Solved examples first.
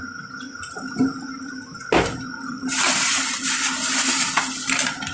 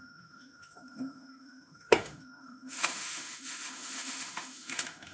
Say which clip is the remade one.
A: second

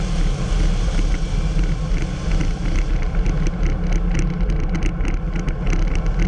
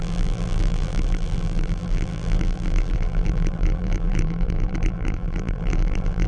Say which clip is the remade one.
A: second